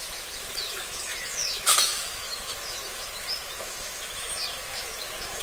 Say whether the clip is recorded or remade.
remade